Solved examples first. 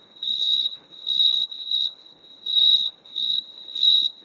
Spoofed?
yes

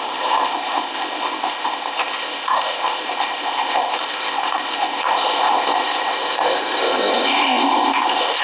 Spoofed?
yes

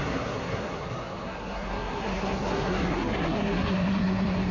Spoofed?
yes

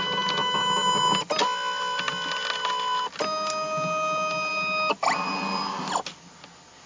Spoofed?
no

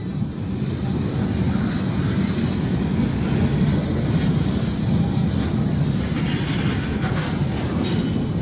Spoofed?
no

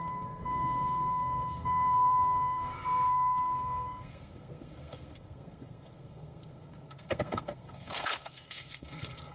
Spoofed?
yes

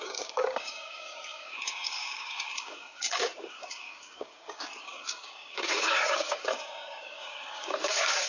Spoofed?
yes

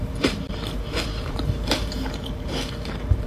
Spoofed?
yes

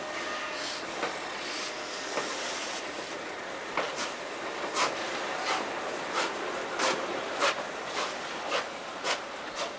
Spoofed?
no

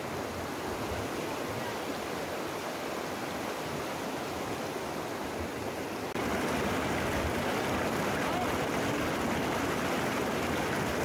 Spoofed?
no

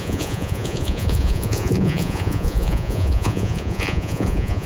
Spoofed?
yes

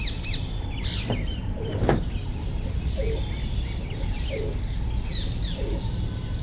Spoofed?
no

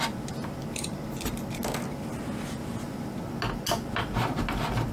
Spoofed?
no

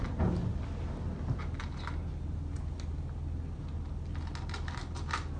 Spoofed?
no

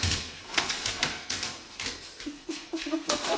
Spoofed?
yes